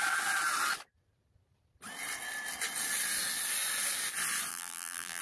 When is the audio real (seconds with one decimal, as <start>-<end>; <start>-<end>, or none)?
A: 0.0-4.5